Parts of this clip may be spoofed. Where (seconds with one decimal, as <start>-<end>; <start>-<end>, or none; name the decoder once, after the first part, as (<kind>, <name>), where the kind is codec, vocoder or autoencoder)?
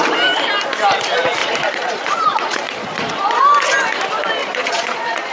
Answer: 1.4-3.4 (vocoder, Vocos); 4.4-5.3